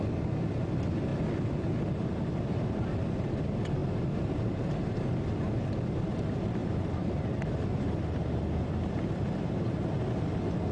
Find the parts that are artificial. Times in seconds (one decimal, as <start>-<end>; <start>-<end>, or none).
3.8-5.2; 6.6-10.1